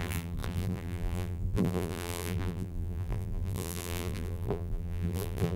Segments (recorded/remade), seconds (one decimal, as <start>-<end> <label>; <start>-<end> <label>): 0.0-5.6 remade